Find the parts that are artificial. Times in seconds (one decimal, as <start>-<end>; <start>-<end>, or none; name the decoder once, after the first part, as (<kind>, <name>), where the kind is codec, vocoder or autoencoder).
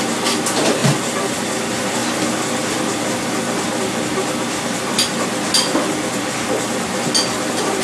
none